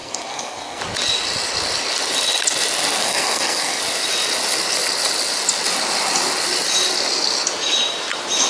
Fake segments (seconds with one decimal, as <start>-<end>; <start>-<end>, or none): 0.0-0.8; 3.0-3.8